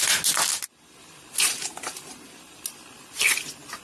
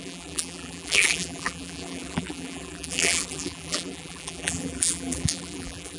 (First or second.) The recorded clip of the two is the first